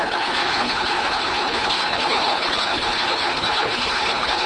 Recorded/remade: remade